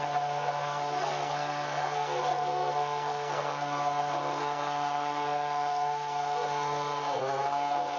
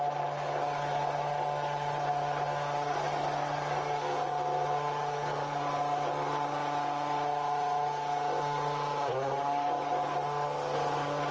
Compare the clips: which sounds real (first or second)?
second